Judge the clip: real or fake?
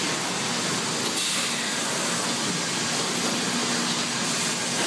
real